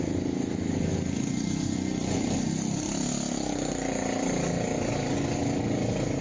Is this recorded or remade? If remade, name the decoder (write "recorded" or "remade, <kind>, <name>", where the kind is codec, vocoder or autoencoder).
recorded